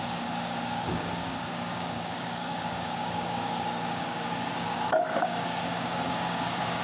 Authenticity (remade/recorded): remade